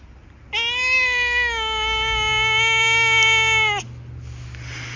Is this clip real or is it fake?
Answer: real